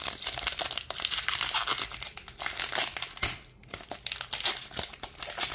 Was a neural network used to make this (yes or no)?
no